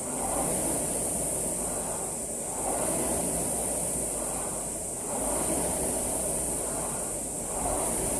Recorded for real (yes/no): yes